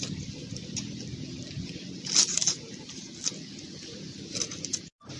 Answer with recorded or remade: recorded